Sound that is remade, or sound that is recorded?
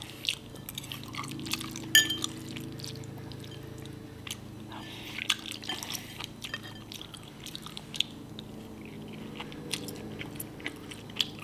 recorded